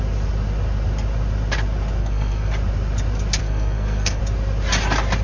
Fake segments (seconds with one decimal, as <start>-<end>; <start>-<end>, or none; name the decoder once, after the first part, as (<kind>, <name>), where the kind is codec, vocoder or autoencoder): 2.0-2.5 (codec, SNAC); 3.4-4.2